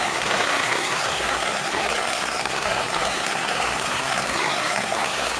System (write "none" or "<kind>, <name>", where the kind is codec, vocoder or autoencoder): codec, SNAC